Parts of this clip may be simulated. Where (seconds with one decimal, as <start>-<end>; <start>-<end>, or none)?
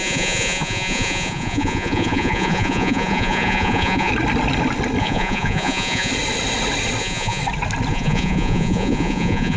0.0-4.1; 5.0-6.1; 7.0-7.4; 7.9-9.6